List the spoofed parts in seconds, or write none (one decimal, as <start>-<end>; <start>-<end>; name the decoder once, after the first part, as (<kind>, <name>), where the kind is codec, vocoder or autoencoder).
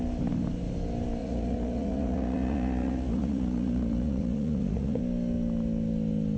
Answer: 1.2-5.0 (vocoder, Vocos)